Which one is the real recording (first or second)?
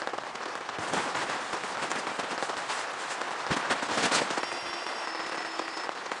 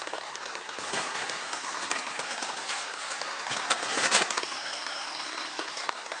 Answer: first